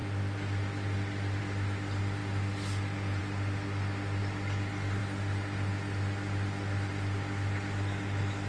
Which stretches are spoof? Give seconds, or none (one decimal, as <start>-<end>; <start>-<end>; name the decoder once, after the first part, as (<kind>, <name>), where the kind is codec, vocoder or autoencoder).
none